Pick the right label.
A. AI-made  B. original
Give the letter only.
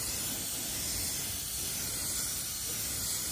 B